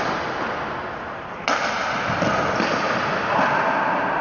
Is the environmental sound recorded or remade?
recorded